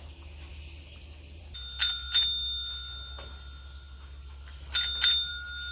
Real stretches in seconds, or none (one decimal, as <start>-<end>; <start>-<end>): 0.0-5.7